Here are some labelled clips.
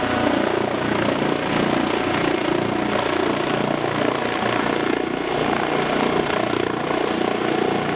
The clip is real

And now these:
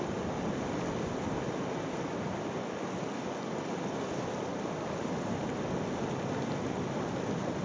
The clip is real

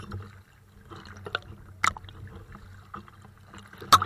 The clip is real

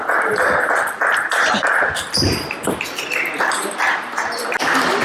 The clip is real